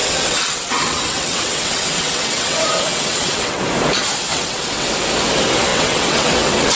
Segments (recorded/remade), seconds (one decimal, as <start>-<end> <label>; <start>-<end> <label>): 0.0-3.6 remade; 3.6-4.3 recorded; 4.3-4.9 remade; 4.9-5.7 recorded; 5.7-6.8 remade